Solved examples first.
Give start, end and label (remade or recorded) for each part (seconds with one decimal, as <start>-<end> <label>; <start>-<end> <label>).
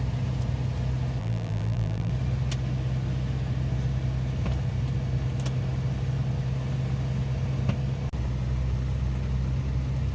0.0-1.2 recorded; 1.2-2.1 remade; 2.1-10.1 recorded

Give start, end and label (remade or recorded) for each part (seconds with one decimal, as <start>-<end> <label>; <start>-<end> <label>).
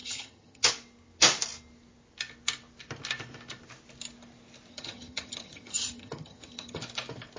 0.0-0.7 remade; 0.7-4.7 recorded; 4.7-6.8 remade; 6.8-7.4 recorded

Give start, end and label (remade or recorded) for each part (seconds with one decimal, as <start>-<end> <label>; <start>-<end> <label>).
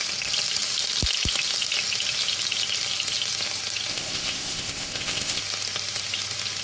0.0-3.9 recorded; 3.9-5.4 remade; 5.4-6.6 recorded